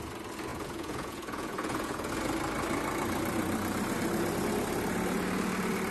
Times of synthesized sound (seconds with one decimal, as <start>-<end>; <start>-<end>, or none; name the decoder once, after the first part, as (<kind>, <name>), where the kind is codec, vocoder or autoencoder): 0.5-2.1 (vocoder, Vocos)